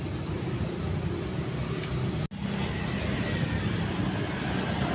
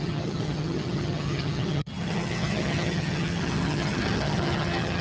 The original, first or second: first